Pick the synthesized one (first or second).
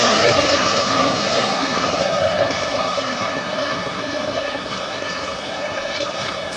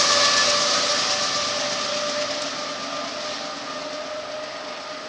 first